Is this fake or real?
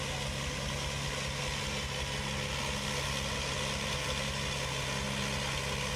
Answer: real